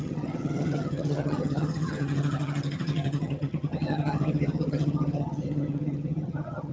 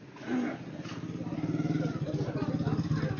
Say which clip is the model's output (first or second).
first